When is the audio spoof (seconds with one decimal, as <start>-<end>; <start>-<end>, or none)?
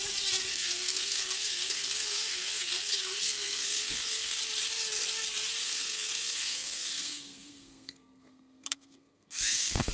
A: 0.5-4.4; 5.6-9.9